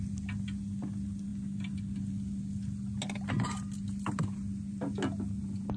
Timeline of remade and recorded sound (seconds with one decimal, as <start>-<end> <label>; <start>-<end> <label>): 0.0-5.8 recorded